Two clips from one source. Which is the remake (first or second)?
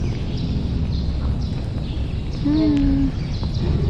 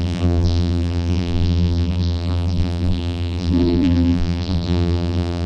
second